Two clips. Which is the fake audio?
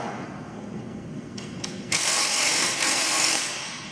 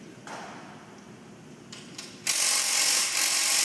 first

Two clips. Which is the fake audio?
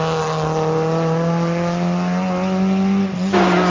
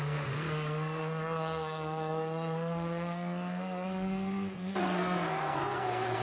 second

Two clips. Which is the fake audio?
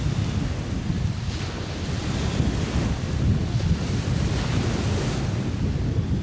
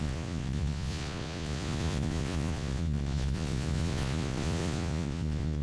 second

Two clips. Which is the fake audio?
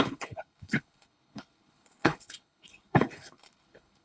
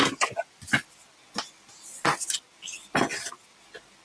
first